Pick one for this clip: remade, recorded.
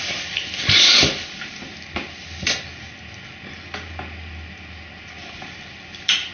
recorded